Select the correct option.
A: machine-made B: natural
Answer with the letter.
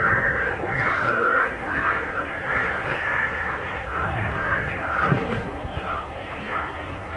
A